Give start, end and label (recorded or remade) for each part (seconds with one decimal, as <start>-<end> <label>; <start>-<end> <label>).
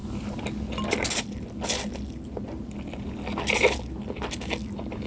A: 0.0-5.1 recorded